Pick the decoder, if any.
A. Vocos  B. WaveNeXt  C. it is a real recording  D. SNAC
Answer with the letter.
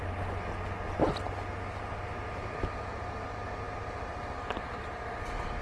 C